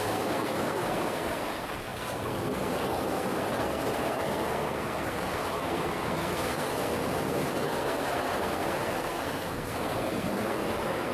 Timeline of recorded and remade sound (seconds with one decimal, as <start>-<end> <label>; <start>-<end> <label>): 0.0-11.1 remade